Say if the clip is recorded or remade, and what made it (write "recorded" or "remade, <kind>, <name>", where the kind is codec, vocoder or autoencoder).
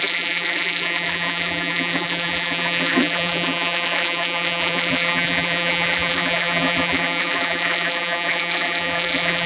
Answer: remade, vocoder, BigVGAN v2